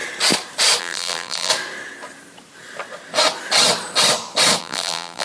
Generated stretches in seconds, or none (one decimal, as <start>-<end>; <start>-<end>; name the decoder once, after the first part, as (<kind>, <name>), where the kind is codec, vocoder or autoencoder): 0.8-1.5 (vocoder, BigVGAN v2); 4.6-5.2

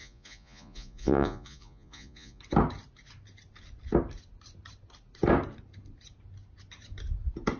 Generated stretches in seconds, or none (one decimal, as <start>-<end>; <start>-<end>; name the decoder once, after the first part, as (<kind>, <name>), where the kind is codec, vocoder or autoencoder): 0.0-2.4 (vocoder, Vocos)

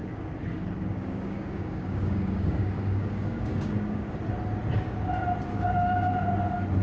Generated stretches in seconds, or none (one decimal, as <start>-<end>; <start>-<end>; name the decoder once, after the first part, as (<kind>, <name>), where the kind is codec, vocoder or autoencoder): 0.0-4.1 (codec, DAC); 5.5-6.1

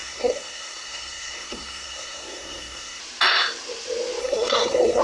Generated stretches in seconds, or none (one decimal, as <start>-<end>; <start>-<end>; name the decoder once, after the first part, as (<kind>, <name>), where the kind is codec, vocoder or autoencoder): 0.0-3.0 (codec, SNAC); 4.2-5.0

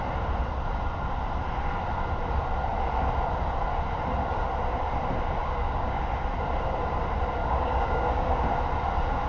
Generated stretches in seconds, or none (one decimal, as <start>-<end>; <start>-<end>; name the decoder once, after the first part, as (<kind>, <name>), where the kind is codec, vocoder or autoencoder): 5.4-6.0 (codec, DAC); 7.4-8.4

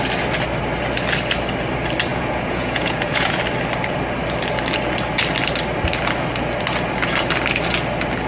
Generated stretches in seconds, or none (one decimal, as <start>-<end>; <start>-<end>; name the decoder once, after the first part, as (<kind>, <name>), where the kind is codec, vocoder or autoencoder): 2.1-3.4 (vocoder, Vocos)

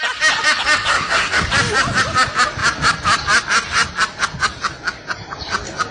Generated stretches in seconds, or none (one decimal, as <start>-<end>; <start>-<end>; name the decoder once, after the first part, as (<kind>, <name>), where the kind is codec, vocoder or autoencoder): 0.9-1.5 (codec, SNAC)

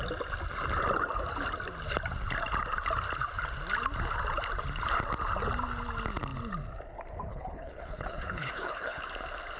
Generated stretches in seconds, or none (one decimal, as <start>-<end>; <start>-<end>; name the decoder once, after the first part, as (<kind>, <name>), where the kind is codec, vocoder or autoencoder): 7.3-9.0 (codec, HILCodec)